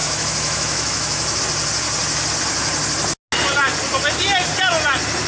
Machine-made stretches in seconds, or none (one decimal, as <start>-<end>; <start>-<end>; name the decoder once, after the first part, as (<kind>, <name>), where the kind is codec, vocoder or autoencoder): 0.0-1.4 (autoencoder, DAC-VAE)